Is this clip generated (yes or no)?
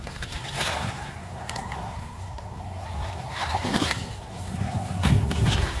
yes